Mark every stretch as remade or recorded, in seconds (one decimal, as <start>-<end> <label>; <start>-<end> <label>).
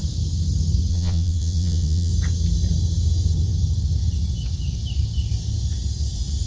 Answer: 0.0-0.9 recorded; 0.9-2.1 remade; 2.1-6.5 recorded